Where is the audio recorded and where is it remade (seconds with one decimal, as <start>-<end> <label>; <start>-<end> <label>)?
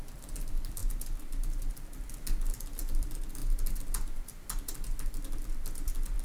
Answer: 0.0-0.8 remade; 0.8-1.7 recorded; 1.7-3.4 remade; 3.4-5.1 recorded; 5.1-6.2 remade